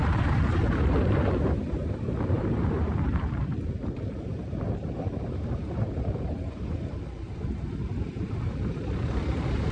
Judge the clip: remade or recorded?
remade